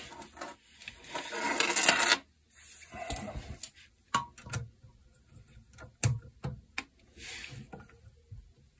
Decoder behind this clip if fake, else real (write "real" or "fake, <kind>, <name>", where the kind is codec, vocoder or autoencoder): real